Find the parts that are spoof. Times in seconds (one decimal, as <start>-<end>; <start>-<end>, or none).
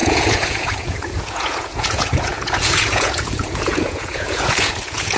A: 0.0-5.2